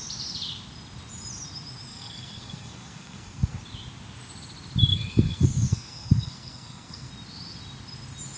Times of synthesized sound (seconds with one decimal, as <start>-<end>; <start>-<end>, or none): 1.9-3.6; 4.9-7.1